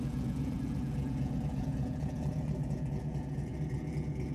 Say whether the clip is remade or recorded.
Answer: remade